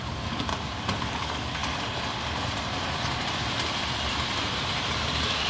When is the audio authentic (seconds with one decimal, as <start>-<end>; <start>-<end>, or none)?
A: 0.5-1.0; 1.6-4.9